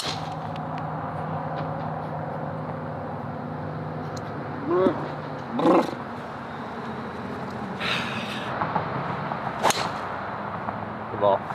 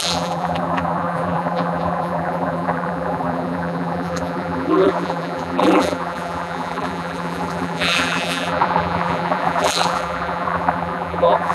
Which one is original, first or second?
first